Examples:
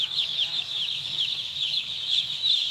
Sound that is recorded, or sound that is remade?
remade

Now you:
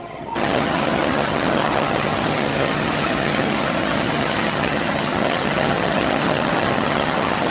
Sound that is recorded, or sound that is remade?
remade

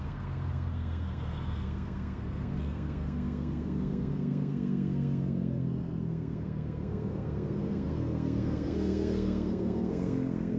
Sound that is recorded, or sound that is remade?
remade